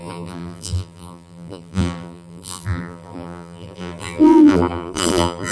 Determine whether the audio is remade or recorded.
remade